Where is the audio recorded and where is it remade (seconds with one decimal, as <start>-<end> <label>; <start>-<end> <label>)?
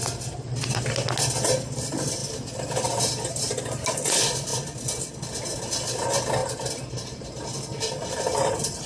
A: 0.0-8.9 recorded